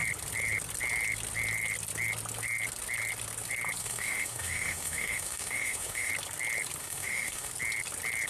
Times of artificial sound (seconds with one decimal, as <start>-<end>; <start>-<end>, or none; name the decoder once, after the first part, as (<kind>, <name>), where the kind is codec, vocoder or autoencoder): 3.8-6.1 (autoencoder, DAC-VAE); 6.8-7.5

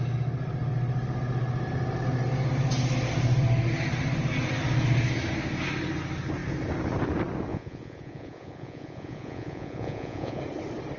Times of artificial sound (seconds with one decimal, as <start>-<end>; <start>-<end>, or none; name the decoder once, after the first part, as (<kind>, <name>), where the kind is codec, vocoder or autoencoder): 7.5-10.4 (vocoder, Vocos)

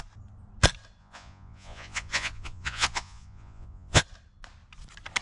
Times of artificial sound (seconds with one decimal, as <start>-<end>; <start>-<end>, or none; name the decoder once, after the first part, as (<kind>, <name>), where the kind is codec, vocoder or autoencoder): 1.0-4.0 (vocoder, Vocos)

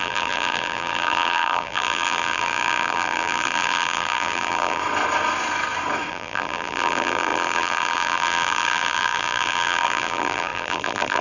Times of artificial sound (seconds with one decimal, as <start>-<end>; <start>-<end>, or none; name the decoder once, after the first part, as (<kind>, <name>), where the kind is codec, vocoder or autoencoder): 0.0-4.8 (vocoder, BigVGAN v2); 6.1-11.2

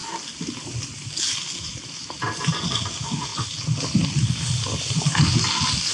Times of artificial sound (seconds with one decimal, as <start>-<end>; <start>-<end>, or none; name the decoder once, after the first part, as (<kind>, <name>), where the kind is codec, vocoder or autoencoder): none

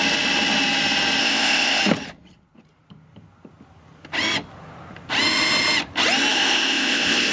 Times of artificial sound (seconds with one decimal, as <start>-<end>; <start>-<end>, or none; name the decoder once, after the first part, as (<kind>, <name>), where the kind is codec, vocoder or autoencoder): 1.2-1.8 (codec, ZipCodec); 6.3-7.3

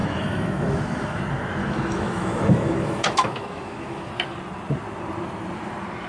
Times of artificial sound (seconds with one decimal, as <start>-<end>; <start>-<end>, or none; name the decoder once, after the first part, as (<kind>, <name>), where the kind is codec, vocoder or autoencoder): 0.0-1.2 (autoencoder, DAC-VAE); 1.6-4.1

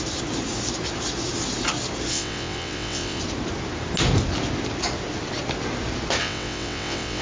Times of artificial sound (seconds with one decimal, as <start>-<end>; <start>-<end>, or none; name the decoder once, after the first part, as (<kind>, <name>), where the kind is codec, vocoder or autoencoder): 2.1-3.2 (vocoder, WaveNeXt); 6.2-7.2